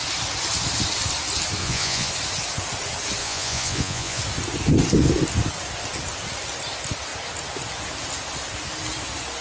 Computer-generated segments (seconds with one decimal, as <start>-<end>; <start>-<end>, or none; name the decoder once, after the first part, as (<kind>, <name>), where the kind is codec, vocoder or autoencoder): 1.6-2.1 (vocoder, Vocos); 3.2-4.2